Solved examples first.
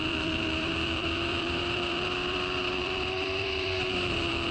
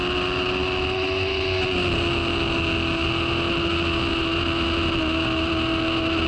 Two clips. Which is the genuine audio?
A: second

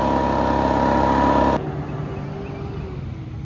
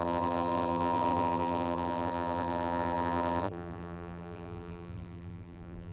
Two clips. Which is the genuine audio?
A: first